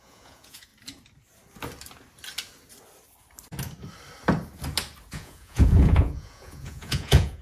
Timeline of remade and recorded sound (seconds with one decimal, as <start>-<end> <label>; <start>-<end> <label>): 0.0-0.7 remade; 0.7-5.1 recorded; 5.1-7.4 remade

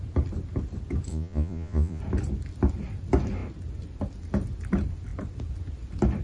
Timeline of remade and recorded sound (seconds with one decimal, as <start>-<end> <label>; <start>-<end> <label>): 0.0-1.1 recorded; 1.1-2.0 remade; 2.0-6.2 recorded

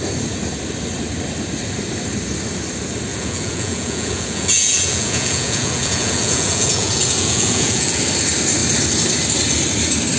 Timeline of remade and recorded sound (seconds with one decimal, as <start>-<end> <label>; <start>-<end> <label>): 0.0-3.1 recorded; 3.1-8.0 remade; 8.0-10.2 recorded

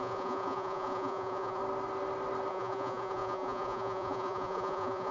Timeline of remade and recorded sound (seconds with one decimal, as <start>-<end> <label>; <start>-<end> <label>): 0.0-1.6 remade; 1.6-2.5 recorded; 2.5-5.1 remade

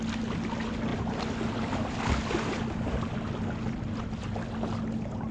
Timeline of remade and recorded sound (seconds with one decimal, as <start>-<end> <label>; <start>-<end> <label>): 0.0-5.3 recorded

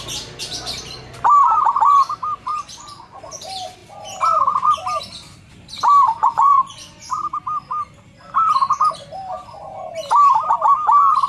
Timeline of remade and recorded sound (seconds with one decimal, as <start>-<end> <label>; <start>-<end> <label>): 0.0-2.5 recorded; 2.5-3.2 remade; 3.2-6.2 recorded; 6.2-7.2 remade; 7.2-11.3 recorded

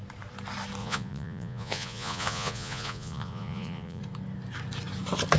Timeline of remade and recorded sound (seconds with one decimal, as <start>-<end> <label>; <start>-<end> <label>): 0.0-0.8 recorded; 0.8-4.0 remade; 4.0-5.4 recorded